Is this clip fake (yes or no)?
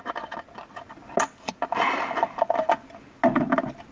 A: no